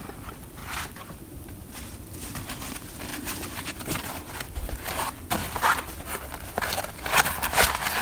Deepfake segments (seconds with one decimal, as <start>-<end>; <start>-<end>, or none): 0.6-1.4; 3.1-4.9; 5.4-6.0